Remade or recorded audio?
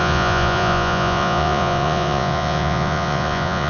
remade